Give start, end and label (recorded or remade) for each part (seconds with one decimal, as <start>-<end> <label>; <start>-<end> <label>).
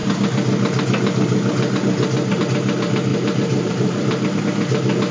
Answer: 0.0-3.1 recorded; 3.1-4.4 remade; 4.4-5.1 recorded